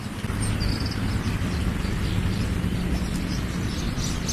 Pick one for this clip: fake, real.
real